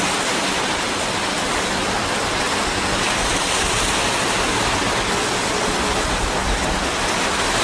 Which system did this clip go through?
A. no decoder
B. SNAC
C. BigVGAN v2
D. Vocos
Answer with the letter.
A